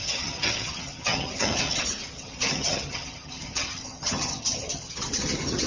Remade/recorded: remade